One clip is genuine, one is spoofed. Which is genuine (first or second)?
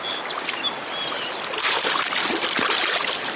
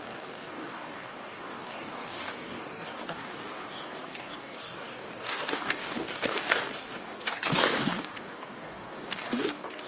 first